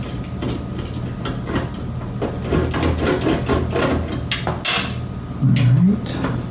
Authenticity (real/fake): real